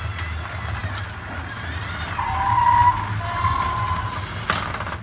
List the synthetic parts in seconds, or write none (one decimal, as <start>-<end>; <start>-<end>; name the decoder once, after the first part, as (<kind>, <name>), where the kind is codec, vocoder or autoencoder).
none